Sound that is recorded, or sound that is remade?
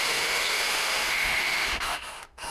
remade